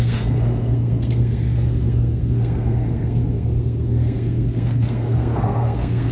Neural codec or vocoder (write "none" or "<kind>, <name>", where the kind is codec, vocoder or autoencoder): codec, SNAC